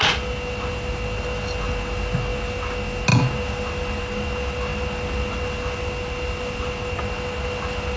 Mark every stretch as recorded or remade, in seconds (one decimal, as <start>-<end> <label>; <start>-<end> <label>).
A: 0.0-8.0 recorded